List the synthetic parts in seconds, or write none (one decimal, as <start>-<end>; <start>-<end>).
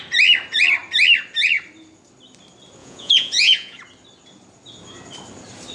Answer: 2.8-3.8